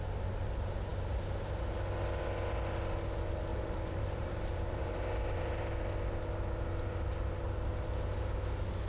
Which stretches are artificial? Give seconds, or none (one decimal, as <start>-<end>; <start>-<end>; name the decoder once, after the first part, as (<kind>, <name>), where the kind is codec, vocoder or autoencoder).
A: 3.5-5.7 (vocoder, BigVGAN v2)